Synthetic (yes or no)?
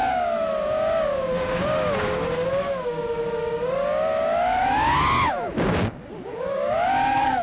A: yes